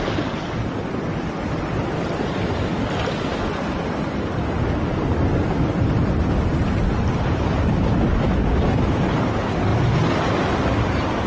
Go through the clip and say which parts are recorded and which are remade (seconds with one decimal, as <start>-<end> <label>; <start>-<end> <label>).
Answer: 0.0-11.3 recorded